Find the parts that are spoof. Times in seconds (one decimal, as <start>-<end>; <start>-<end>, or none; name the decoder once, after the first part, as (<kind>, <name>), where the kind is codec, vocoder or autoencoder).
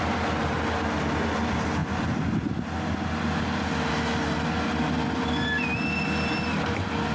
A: none